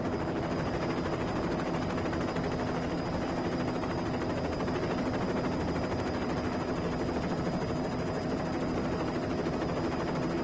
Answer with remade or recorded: recorded